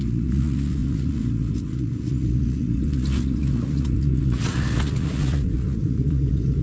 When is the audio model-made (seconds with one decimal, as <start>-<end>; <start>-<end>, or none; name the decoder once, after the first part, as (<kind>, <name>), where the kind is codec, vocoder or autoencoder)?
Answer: 0.0-6.6 (vocoder, Vocos)